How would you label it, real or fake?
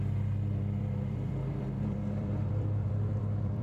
fake